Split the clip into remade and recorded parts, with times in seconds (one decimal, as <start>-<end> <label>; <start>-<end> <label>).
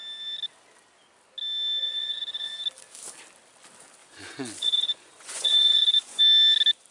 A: 0.0-1.8 recorded; 1.8-2.5 remade; 2.5-4.0 recorded; 4.0-6.2 remade; 6.2-6.9 recorded